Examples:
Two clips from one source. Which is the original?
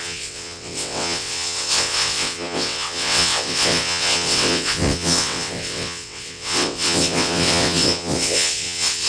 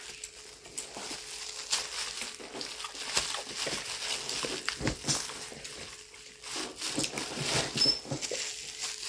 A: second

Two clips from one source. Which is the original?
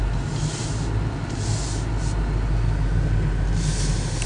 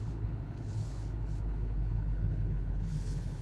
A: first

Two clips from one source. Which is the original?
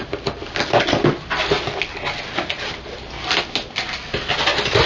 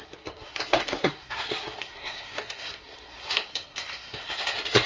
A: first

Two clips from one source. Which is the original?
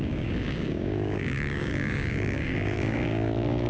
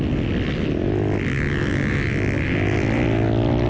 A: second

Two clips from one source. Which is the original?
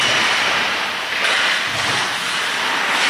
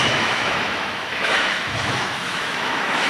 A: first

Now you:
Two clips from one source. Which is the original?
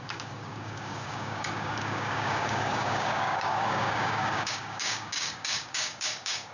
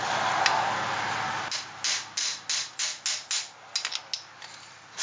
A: second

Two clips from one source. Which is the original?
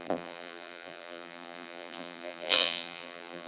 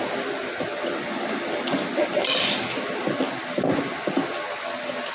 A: second